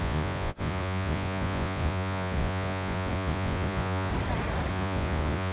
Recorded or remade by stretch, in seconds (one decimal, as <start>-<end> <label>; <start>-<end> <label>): 0.0-4.1 remade; 4.1-4.7 recorded; 4.7-5.5 remade